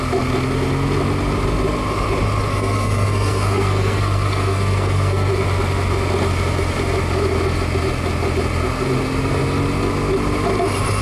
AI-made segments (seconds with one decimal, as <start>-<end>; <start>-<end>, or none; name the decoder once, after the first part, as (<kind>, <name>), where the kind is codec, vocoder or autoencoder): 2.5-5.3 (codec, SNAC)